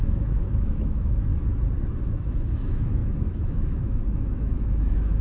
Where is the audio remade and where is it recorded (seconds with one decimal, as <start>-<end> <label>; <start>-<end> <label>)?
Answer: 0.0-1.3 remade; 1.3-2.0 recorded; 2.0-5.2 remade